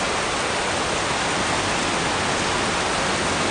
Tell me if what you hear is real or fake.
real